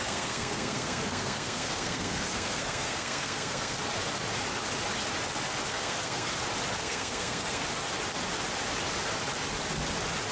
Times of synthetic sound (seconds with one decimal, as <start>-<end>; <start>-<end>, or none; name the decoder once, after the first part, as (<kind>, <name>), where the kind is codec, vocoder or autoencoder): 0.0-3.8 (codec, SNAC); 5.7-6.3; 6.8-7.6